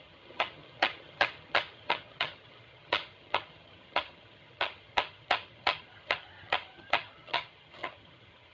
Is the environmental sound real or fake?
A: fake